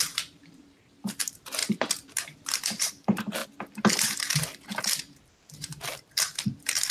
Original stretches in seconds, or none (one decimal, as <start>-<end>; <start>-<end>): 3.4-4.8